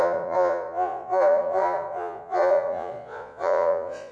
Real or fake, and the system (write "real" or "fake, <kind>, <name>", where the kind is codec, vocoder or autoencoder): fake, vocoder, Vocos